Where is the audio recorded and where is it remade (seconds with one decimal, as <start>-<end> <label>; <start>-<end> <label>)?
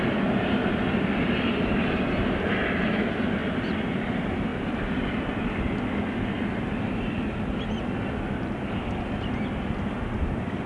0.0-3.4 recorded; 3.4-4.1 remade; 4.1-10.7 recorded